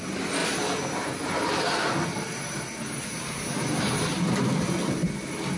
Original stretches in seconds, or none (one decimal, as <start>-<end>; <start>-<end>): 0.0-5.6